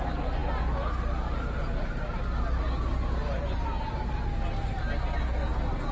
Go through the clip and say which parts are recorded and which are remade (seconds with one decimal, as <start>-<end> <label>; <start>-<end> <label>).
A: 0.0-5.9 recorded